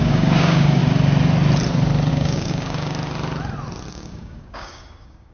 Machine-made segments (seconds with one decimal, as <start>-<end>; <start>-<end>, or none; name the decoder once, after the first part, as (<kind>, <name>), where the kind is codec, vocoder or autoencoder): 0.0-0.8 (codec, DAC); 2.1-3.0; 3.9-5.3